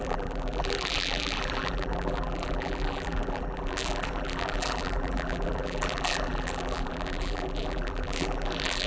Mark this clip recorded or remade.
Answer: remade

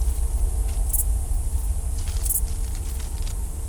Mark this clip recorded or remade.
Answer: recorded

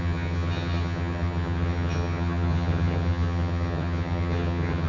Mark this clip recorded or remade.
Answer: remade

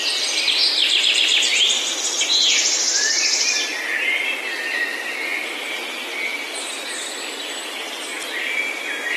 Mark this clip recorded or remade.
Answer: recorded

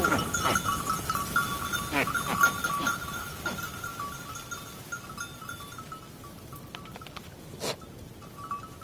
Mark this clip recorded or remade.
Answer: recorded